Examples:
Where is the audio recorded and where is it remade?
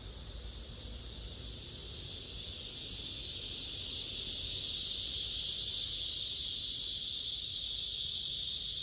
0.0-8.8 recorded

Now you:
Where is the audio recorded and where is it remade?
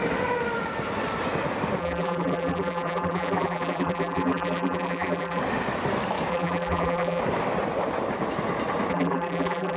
0.0-1.8 recorded; 1.8-5.4 remade; 5.4-6.3 recorded; 6.3-7.2 remade; 7.2-8.9 recorded; 8.9-9.8 remade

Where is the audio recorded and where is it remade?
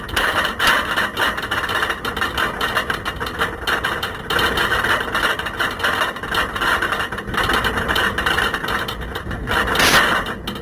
0.0-10.6 recorded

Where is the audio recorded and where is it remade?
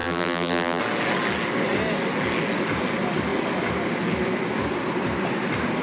0.0-0.8 remade; 0.8-5.8 recorded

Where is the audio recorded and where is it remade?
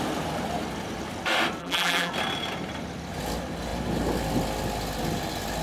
0.0-1.6 recorded; 1.6-2.1 remade; 2.1-5.6 recorded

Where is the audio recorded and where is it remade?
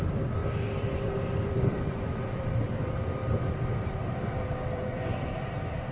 0.0-5.9 remade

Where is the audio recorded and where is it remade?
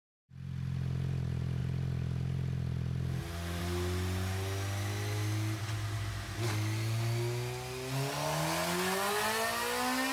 0.0-10.1 recorded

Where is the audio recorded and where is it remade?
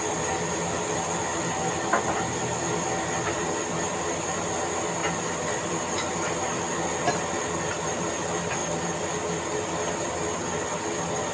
0.0-11.3 recorded